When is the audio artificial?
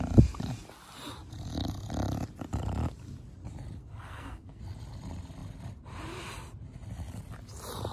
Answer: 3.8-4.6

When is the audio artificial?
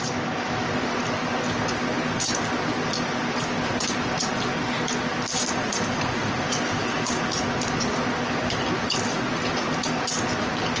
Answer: 5.6-6.6